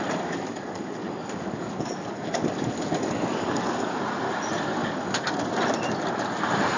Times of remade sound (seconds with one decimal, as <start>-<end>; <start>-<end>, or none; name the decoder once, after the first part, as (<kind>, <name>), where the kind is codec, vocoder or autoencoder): 0.0-4.0 (codec, DAC); 4.8-5.3